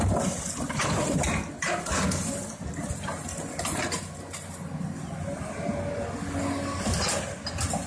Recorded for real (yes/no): yes